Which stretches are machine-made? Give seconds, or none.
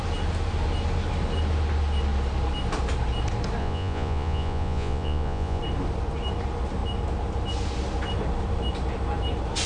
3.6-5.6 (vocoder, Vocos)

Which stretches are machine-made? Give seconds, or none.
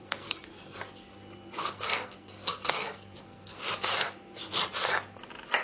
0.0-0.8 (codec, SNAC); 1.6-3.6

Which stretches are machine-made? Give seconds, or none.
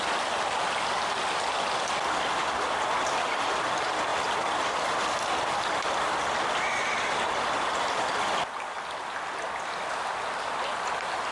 2.4-3.4 (vocoder, BigVGAN v2); 4.1-4.6; 5.0-9.2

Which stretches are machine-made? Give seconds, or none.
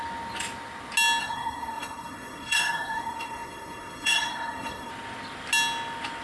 1.2-4.9 (codec, SNAC)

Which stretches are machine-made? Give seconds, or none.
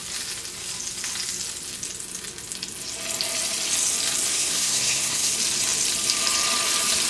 4.3-5.3 (codec, SNAC)